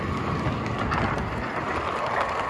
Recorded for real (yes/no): yes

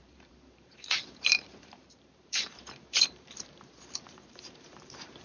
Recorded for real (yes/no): no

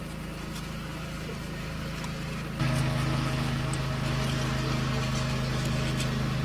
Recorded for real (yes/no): yes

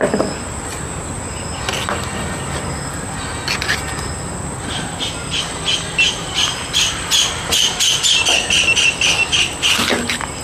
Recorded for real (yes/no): yes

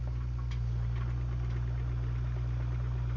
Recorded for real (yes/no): no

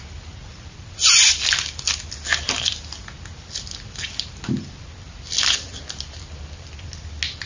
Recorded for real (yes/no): yes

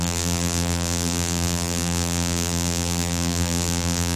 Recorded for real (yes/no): no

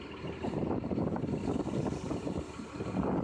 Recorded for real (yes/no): no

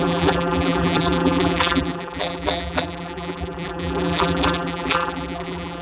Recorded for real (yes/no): no